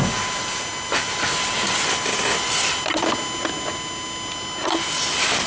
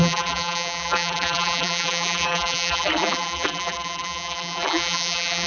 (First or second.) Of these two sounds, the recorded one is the first